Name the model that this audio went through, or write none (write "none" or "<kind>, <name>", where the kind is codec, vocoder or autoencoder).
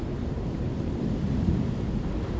vocoder, BigVGAN v2